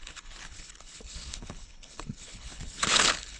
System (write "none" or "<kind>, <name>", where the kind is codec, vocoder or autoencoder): codec, HILCodec